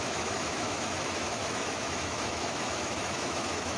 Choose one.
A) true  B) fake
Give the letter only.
B